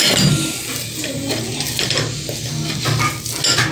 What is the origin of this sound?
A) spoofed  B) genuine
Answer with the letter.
B